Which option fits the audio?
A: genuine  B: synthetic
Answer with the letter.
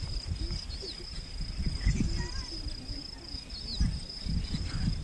A